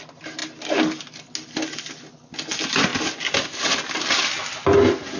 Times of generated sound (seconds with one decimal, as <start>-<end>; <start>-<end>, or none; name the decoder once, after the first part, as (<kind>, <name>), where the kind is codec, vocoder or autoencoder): none

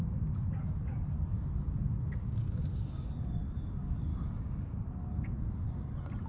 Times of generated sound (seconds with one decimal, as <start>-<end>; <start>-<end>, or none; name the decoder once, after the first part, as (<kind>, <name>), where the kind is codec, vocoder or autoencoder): 4.1-4.8 (codec, DAC)

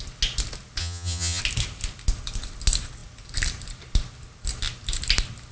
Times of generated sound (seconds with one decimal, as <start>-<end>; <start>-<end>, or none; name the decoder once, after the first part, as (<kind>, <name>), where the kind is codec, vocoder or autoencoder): 0.8-1.4 (vocoder, HiFi-GAN)

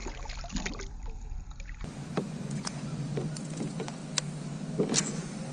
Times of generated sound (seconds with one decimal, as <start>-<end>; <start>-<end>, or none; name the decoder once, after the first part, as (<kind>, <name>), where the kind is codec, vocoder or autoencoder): 2.2-4.0 (vocoder, Vocos); 5.0-5.5

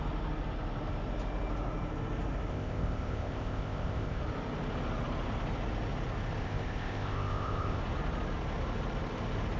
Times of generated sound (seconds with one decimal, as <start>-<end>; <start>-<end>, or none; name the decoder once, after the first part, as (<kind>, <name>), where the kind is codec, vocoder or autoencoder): 2.5-4.2 (codec, ZipCodec); 6.4-7.8

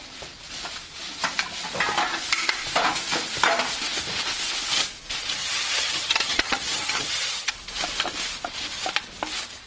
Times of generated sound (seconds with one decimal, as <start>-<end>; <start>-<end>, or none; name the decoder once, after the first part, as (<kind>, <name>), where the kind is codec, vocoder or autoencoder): 5.4-7.5 (vocoder, HiFi-GAN)